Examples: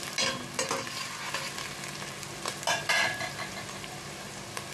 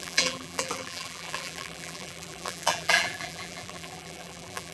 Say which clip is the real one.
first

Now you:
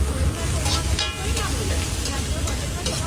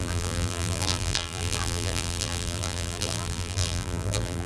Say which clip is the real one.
first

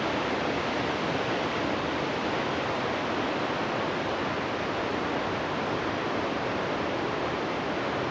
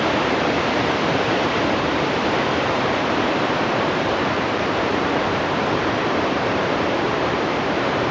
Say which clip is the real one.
first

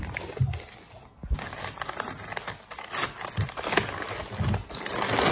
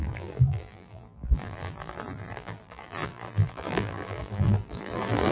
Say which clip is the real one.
first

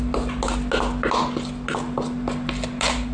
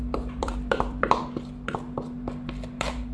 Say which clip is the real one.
first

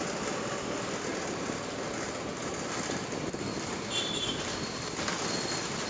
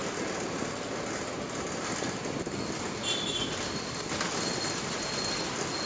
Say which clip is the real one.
second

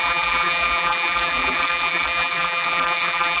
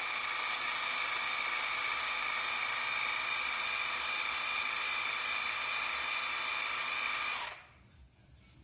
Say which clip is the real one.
second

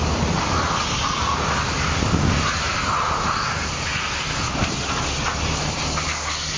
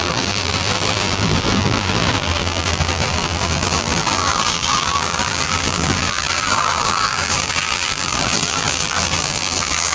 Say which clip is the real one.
first